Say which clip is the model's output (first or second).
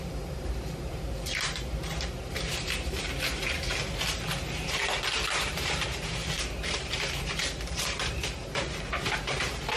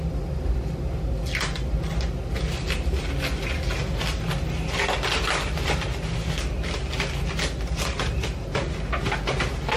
first